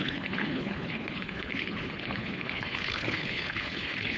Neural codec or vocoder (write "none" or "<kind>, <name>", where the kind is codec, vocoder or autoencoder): codec, HILCodec